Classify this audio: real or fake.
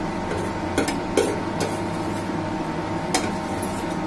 real